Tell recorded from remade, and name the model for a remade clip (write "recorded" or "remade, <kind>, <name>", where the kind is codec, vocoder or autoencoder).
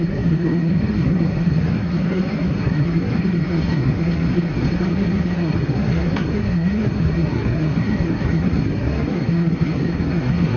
remade, codec, SNAC